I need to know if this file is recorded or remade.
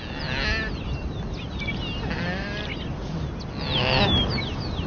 recorded